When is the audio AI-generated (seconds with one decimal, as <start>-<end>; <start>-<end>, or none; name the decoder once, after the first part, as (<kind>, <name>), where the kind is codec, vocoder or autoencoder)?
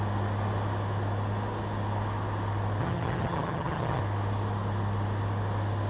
2.8-4.0 (vocoder, HiFi-GAN)